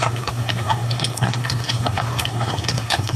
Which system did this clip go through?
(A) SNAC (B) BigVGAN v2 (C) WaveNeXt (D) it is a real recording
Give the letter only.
A